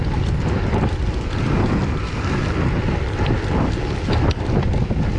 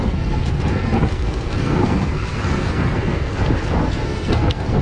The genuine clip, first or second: first